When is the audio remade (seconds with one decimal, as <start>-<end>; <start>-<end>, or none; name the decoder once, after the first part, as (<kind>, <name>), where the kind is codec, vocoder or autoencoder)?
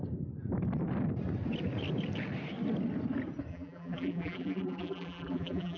3.5-5.8 (vocoder, BigVGAN v2)